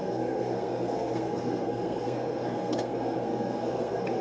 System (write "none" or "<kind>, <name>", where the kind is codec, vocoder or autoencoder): codec, SNAC